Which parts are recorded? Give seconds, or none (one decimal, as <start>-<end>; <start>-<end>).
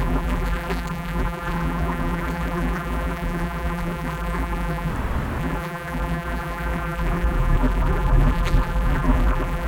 4.9-5.4